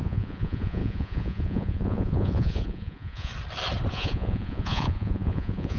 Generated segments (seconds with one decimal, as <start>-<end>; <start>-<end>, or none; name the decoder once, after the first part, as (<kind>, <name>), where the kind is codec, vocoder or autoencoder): 0.0-3.3 (vocoder, Vocos); 3.9-5.8